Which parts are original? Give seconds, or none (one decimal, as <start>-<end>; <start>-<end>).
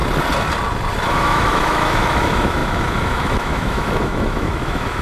0.0-1.1